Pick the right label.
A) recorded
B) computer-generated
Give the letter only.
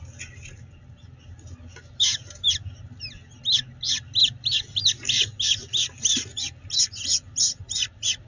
A